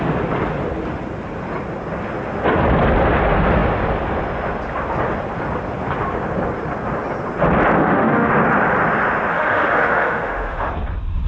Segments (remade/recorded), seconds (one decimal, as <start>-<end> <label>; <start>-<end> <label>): 0.0-7.8 recorded; 7.8-8.3 remade; 8.3-9.3 recorded; 9.3-10.7 remade; 10.7-11.3 recorded